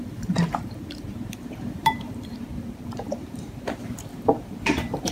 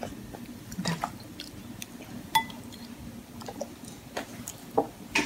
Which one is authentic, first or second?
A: second